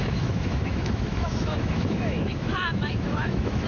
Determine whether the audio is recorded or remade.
remade